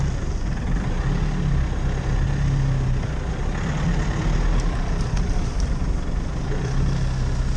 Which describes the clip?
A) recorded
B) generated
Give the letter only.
A